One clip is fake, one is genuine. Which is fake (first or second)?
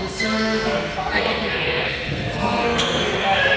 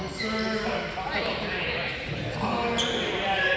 first